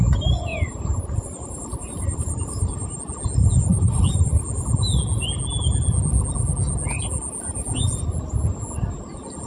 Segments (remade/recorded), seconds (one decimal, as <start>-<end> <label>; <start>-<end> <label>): 0.0-0.5 recorded; 0.5-3.0 remade; 3.0-3.7 recorded; 3.7-4.4 remade; 4.4-9.5 recorded

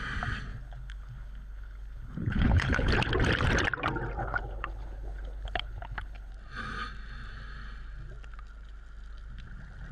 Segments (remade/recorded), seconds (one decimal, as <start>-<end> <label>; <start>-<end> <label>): 0.0-0.5 recorded; 0.5-2.9 remade; 2.9-4.2 recorded; 4.2-6.3 remade; 6.3-9.9 recorded

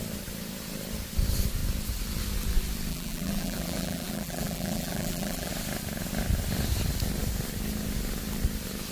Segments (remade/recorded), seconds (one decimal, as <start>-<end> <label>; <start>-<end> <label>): 0.0-2.9 recorded; 2.9-5.5 remade; 5.5-8.9 recorded

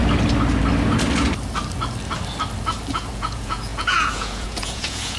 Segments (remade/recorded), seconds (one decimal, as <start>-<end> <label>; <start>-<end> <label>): 0.0-3.1 recorded; 3.1-5.2 remade

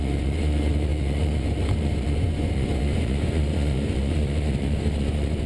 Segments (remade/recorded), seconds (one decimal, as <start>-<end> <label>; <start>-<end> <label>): 0.0-5.5 remade

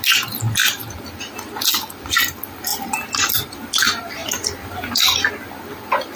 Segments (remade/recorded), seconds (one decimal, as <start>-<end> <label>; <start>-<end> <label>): 0.0-2.7 recorded; 2.7-3.3 remade; 3.3-4.2 recorded; 4.2-5.3 remade; 5.3-6.2 recorded

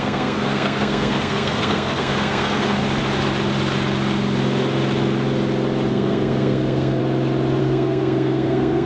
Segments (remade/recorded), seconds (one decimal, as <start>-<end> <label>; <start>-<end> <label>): 0.0-2.8 remade; 2.8-5.9 recorded; 5.9-7.0 remade; 7.0-7.6 recorded; 7.6-8.9 remade

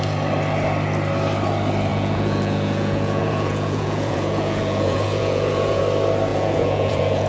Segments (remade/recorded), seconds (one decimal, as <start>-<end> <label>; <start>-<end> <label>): 0.0-1.9 recorded; 1.9-5.8 remade; 5.8-6.3 recorded; 6.3-7.3 remade